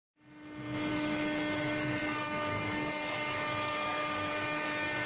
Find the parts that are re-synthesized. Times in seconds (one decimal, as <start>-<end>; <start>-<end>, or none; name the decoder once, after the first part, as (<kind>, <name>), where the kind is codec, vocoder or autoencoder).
0.9-5.1 (codec, DAC)